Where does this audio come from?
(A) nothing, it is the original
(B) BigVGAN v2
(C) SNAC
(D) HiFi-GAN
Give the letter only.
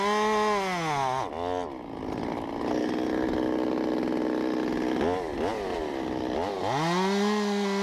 A